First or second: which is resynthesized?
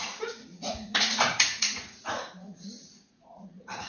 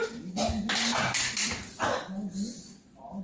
first